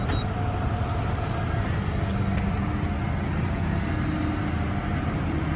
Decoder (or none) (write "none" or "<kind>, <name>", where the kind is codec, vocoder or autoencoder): none